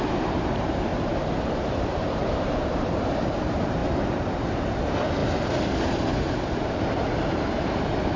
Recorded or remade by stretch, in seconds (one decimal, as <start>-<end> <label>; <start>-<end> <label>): 0.0-0.9 remade; 0.9-1.5 recorded; 1.5-3.8 remade; 3.8-4.8 recorded; 4.8-5.2 remade; 5.2-6.2 recorded; 6.2-8.2 remade